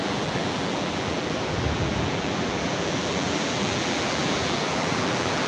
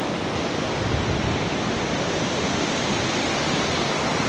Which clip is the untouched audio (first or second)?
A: second